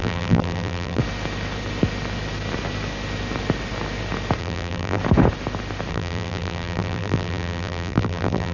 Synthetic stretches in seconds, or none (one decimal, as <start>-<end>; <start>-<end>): 0.0-1.0; 4.4-5.0; 5.9-8.5